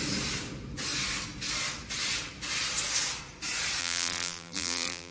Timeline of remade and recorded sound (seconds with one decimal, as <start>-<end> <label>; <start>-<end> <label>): 0.0-3.8 recorded; 3.8-5.1 remade